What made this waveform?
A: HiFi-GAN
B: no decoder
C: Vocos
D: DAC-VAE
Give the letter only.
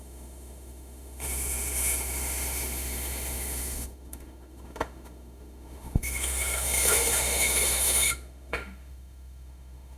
D